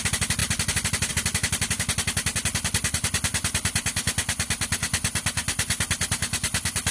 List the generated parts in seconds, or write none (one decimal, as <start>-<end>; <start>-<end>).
none